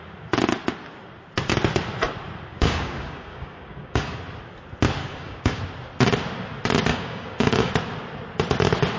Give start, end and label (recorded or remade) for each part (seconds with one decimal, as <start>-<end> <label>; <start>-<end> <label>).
0.0-2.5 recorded; 2.5-4.2 remade; 4.2-5.0 recorded; 5.0-5.6 remade; 5.6-6.9 recorded; 6.9-7.7 remade; 7.7-9.0 recorded